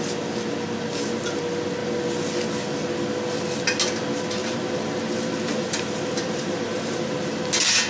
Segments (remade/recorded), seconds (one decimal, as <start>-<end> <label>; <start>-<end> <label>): 0.0-4.4 recorded; 4.4-7.1 remade; 7.1-7.9 recorded